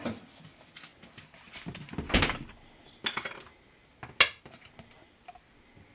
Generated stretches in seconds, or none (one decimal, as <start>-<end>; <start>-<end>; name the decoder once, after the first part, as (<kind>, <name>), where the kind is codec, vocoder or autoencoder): none